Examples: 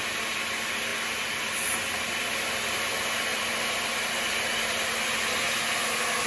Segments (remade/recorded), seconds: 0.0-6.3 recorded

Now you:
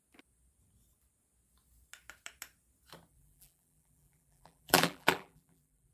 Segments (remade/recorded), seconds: 0.0-3.1 recorded; 3.1-5.9 remade

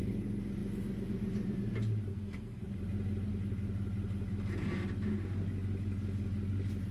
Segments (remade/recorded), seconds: 0.0-2.1 recorded; 2.1-2.6 remade; 2.6-6.9 recorded